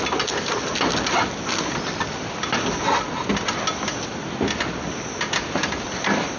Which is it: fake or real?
real